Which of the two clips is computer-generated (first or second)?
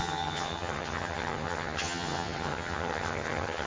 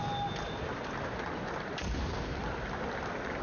first